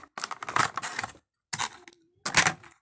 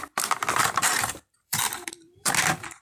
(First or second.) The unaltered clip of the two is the first